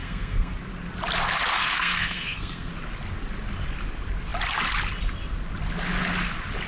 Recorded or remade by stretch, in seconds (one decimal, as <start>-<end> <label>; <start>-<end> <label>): 0.0-0.5 remade; 0.5-1.5 recorded; 1.5-2.7 remade; 2.7-6.7 recorded